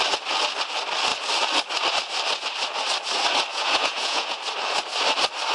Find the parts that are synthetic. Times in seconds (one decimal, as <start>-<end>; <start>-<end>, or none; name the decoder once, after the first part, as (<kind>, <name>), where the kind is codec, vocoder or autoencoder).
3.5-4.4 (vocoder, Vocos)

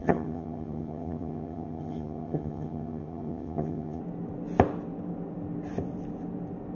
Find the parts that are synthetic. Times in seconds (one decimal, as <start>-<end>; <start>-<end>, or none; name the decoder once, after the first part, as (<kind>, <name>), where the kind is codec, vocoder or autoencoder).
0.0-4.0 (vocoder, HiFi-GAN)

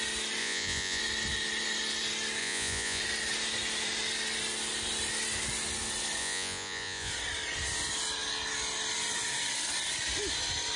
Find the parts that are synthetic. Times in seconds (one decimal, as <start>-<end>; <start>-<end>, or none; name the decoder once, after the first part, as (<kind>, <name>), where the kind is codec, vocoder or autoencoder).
0.4-1.0 (vocoder, Vocos); 2.4-3.0; 6.2-7.1

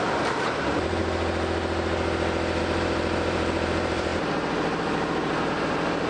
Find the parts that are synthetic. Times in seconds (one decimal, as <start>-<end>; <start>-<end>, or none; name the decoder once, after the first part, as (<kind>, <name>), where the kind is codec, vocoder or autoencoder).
0.0-1.0 (vocoder, BigVGAN v2); 2.6-6.1